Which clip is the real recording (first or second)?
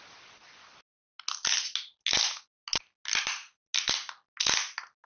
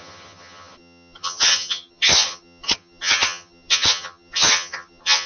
first